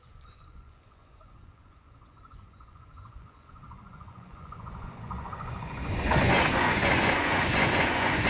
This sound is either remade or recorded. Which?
remade